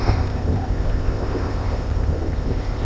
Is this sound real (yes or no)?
no